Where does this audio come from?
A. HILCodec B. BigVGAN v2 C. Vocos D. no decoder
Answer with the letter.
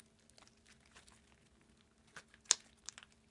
D